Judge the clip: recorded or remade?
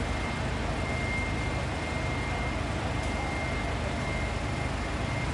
recorded